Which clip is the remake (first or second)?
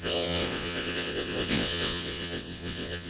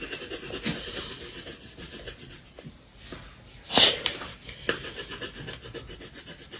first